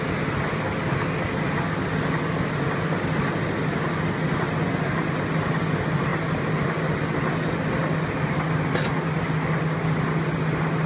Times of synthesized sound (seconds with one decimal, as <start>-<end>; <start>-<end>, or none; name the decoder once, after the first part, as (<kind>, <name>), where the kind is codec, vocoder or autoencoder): none